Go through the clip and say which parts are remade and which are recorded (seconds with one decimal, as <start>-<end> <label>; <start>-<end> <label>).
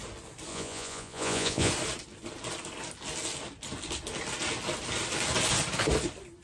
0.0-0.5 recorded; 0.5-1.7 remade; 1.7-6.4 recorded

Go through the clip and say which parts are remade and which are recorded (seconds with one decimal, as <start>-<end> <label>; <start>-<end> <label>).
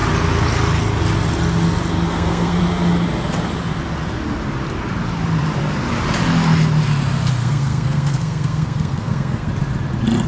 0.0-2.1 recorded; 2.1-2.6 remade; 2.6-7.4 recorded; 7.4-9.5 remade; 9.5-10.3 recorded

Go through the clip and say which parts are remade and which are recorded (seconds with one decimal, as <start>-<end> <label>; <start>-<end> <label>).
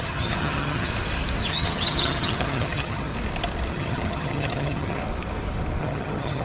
0.0-0.9 remade; 0.9-1.5 recorded; 1.5-3.1 remade; 3.1-3.7 recorded; 3.7-5.0 remade; 5.0-5.8 recorded; 5.8-6.4 remade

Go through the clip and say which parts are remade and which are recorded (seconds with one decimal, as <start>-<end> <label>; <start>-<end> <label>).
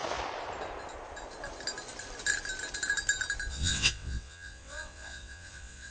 0.0-3.5 recorded; 3.5-5.9 remade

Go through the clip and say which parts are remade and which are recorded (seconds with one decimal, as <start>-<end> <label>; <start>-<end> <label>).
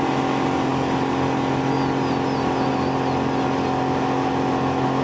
0.0-5.0 recorded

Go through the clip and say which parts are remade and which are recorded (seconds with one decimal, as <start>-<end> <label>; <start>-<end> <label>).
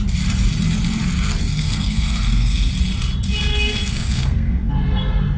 0.0-1.4 recorded; 1.4-2.7 remade; 2.7-3.5 recorded; 3.5-4.7 remade; 4.7-5.4 recorded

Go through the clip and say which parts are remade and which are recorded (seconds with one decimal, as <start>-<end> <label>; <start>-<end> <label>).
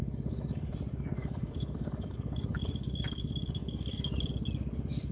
0.0-0.7 remade; 0.7-1.2 recorded; 1.2-4.3 remade; 4.3-5.1 recorded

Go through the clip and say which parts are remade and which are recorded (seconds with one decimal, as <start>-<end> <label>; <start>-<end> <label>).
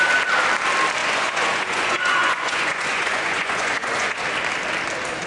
0.0-1.0 recorded; 1.0-4.2 remade; 4.2-5.3 recorded